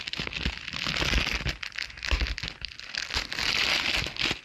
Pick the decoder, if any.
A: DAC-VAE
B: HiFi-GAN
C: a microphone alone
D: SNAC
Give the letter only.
C